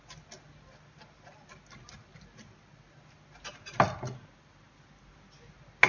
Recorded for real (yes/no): yes